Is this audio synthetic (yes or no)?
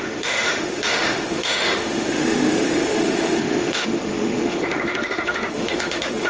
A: yes